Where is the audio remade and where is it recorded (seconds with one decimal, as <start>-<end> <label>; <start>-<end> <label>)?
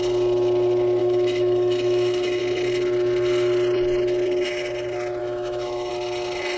0.0-1.0 recorded; 1.0-2.4 remade; 2.4-5.2 recorded; 5.2-5.9 remade; 5.9-6.6 recorded